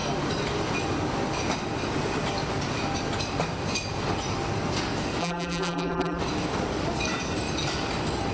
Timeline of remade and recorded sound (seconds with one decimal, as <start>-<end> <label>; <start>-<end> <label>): 0.0-5.2 recorded; 5.2-6.2 remade; 6.2-8.3 recorded